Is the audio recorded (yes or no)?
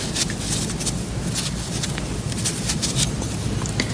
yes